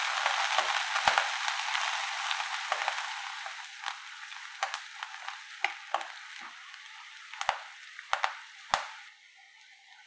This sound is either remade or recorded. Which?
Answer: recorded